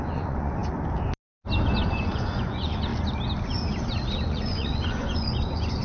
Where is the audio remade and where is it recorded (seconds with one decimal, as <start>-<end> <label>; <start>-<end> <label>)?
0.0-0.6 remade; 0.6-1.9 recorded; 1.9-2.9 remade; 2.9-4.3 recorded; 4.3-5.8 remade